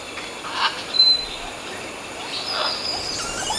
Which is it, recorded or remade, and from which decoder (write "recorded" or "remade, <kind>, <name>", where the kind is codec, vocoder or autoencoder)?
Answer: recorded